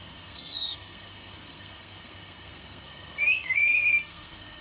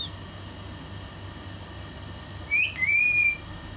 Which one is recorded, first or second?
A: second